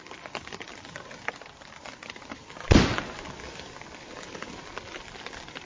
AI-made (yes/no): no